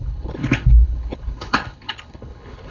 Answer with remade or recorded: remade